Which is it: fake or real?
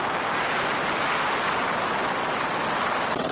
real